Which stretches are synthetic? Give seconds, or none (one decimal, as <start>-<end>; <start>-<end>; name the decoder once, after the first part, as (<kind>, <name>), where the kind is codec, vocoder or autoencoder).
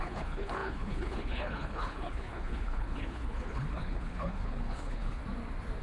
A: 0.0-5.2 (codec, HILCodec)